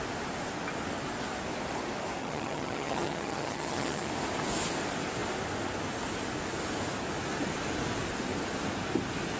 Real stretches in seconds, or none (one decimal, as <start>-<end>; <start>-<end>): 0.0-2.2; 4.1-9.4